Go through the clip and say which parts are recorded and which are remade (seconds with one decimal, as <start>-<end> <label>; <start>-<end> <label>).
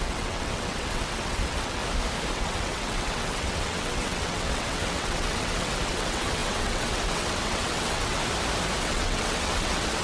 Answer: 0.0-1.8 remade; 1.8-2.3 recorded; 2.3-8.2 remade; 8.2-8.8 recorded; 8.8-10.0 remade